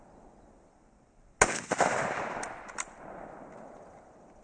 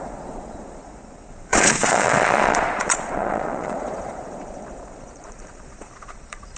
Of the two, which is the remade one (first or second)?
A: second